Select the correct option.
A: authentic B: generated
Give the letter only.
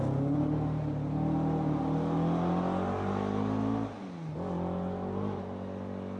A